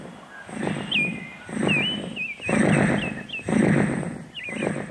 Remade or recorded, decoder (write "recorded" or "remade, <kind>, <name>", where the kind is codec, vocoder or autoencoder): recorded